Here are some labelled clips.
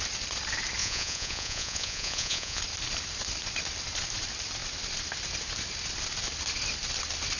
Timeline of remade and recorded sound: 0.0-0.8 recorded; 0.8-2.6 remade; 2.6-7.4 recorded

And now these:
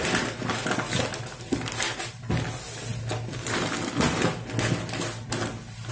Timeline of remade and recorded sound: 0.0-5.9 recorded

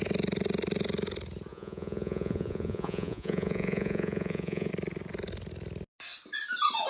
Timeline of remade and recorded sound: 0.0-1.5 recorded; 1.5-4.7 remade; 4.7-6.9 recorded

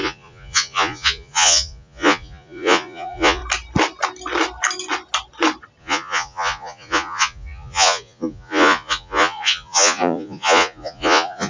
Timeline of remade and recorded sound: 0.0-3.4 remade; 3.4-5.8 recorded; 5.8-11.5 remade

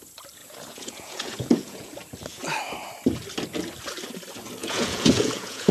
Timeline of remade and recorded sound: 0.0-0.4 recorded; 0.4-1.9 remade; 1.9-4.6 recorded; 4.6-5.7 remade

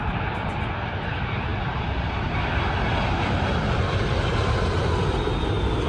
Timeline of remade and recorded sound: 0.0-5.9 recorded

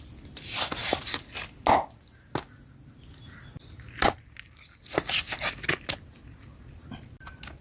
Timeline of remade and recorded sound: 0.0-7.6 recorded